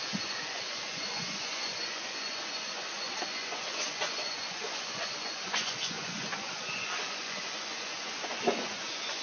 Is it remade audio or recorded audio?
remade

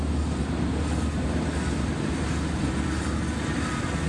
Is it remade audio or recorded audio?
recorded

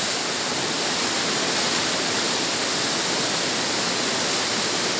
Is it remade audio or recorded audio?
recorded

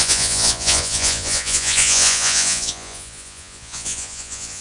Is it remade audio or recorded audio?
remade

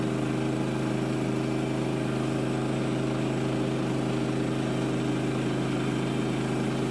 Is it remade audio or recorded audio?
recorded